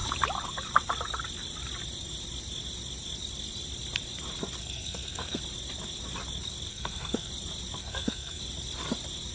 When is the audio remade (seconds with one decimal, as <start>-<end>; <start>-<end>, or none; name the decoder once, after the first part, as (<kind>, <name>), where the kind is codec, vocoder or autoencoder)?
4.6-5.4 (codec, SNAC); 6.7-7.3; 7.8-8.4